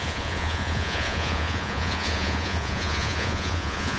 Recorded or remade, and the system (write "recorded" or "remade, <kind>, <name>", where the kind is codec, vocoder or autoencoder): remade, vocoder, Vocos